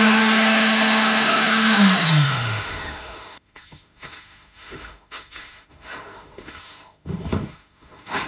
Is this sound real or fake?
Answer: fake